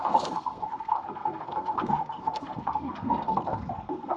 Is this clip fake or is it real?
fake